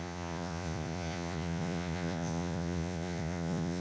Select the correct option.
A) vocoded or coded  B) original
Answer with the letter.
A